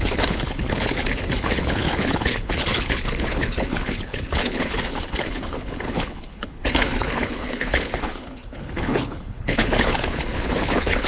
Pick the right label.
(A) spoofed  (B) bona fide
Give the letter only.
A